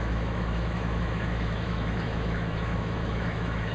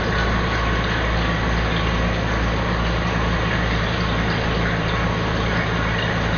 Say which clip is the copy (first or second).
first